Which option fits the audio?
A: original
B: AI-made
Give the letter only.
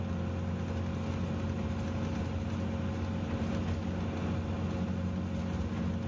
A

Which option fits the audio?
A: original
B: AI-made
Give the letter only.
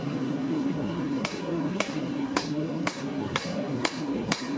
B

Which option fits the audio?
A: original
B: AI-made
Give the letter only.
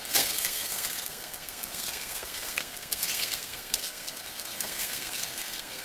B